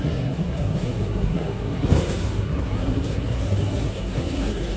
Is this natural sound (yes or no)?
no